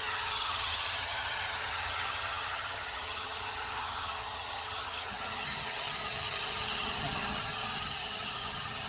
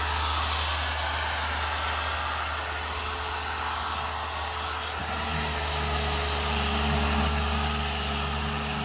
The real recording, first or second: second